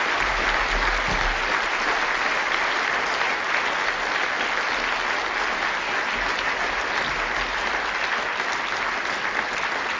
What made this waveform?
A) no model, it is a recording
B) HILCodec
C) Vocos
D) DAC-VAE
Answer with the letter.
A